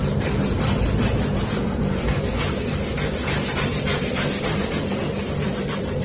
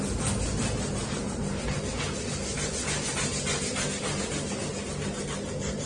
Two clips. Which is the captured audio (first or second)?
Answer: second